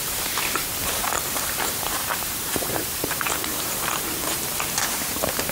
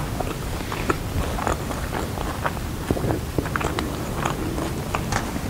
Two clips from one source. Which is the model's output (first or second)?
first